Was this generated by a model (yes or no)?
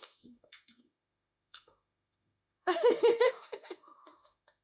yes